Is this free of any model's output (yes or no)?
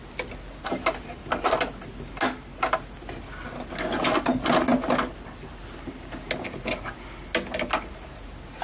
yes